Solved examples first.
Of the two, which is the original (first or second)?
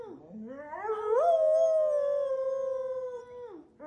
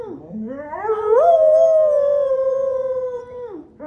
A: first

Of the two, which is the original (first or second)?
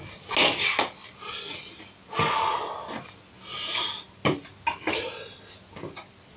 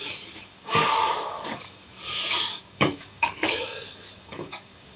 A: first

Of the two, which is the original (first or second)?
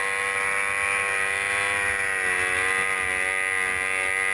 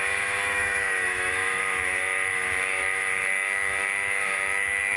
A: first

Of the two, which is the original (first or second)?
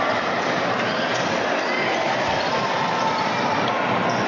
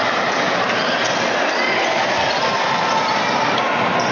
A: second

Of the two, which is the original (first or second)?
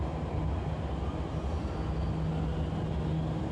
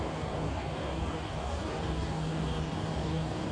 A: first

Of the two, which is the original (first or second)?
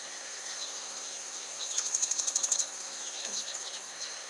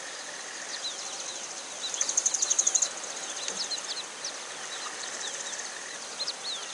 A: second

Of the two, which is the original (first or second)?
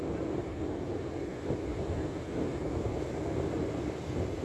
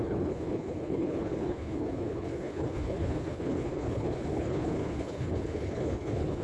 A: first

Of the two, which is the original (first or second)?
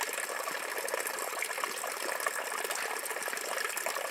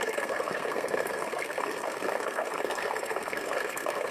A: first